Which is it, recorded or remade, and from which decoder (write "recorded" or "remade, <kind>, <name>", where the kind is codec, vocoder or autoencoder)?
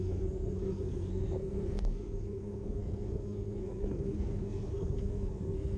remade, codec, SNAC